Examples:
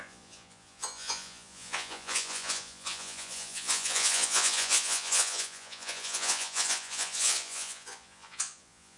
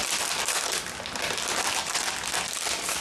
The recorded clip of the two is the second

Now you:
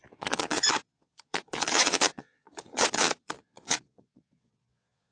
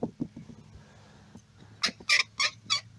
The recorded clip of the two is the second